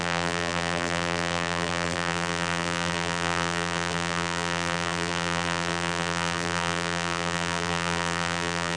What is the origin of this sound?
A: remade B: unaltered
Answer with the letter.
A